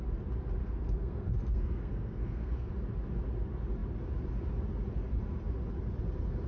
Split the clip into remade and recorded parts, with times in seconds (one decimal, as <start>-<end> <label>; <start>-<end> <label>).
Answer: 0.0-0.6 recorded; 0.6-2.7 remade; 2.7-6.5 recorded